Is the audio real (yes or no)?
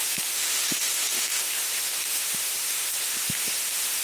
no